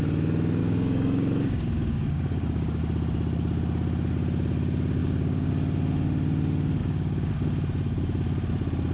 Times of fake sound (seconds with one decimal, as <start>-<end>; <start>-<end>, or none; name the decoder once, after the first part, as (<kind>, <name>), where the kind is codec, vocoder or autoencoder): 0.6-2.8 (codec, DAC); 5.0-5.5; 6.8-7.3